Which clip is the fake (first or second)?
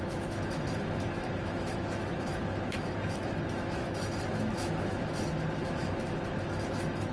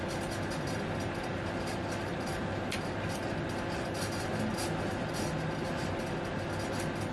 first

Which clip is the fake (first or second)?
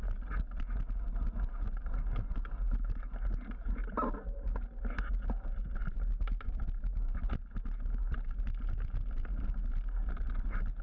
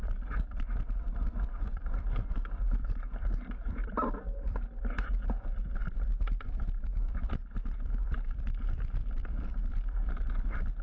second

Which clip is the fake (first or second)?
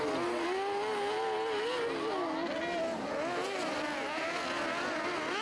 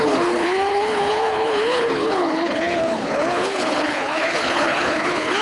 second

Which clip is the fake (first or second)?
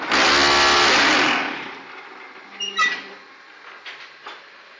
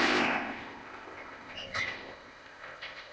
second